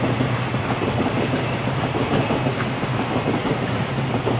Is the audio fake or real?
real